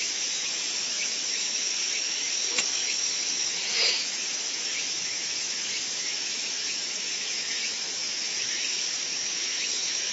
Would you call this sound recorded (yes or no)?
no